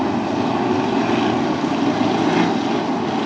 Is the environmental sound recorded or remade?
recorded